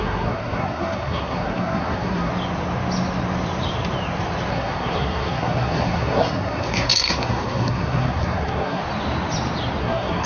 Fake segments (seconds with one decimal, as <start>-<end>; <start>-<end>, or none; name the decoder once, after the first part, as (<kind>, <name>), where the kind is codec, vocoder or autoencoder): 0.0-2.3 (codec, SNAC); 4.5-8.8; 9.8-10.3